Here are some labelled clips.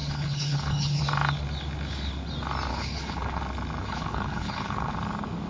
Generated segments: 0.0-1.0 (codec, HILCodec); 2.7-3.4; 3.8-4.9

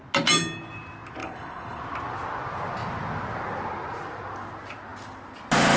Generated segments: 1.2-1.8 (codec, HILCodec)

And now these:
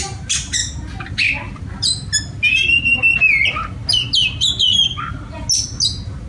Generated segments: none